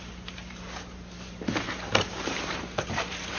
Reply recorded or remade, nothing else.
remade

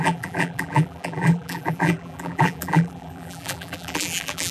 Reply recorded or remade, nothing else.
remade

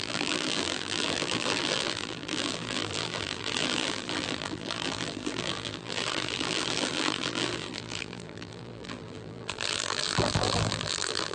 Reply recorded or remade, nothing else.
remade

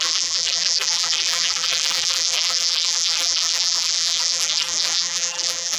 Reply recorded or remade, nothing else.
remade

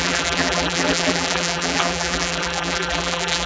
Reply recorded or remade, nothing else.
remade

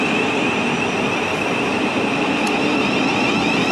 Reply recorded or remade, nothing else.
recorded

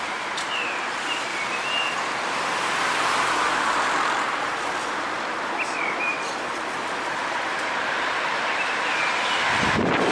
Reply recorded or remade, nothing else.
remade